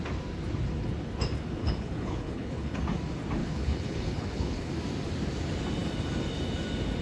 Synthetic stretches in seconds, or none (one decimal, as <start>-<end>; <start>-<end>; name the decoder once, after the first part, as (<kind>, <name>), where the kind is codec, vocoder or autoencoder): 1.6-2.8 (codec, HILCodec); 3.4-4.7